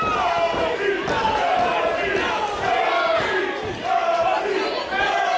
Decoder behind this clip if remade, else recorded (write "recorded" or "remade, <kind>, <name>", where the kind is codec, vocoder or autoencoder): recorded